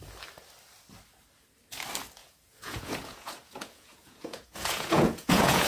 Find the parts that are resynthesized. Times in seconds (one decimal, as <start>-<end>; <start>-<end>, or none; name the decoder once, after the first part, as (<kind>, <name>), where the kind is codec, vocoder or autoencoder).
2.2-5.7 (vocoder, Vocos)